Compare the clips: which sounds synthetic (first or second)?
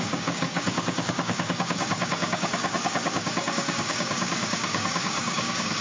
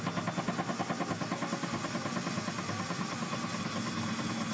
first